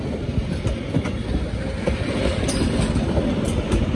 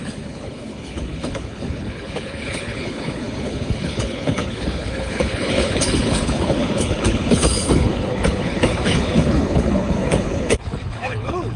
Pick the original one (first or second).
first